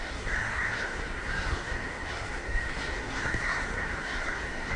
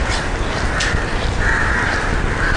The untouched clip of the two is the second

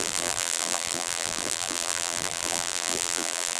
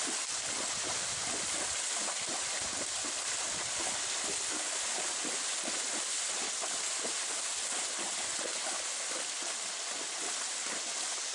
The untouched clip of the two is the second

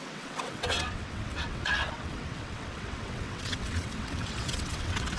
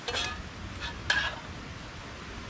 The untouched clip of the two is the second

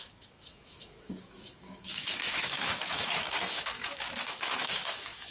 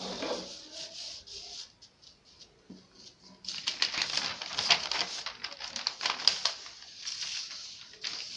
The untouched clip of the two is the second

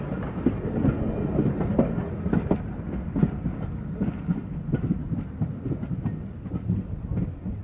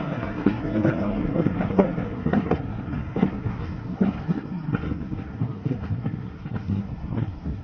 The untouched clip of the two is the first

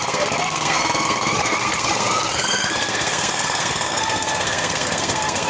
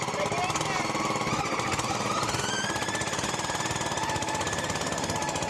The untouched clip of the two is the second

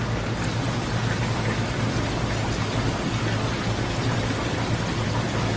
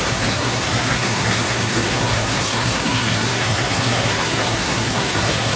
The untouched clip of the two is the first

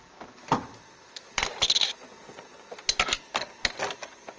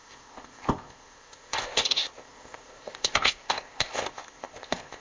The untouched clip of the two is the first